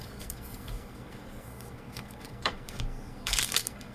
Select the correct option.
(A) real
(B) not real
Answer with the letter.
B